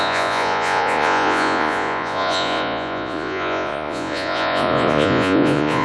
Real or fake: fake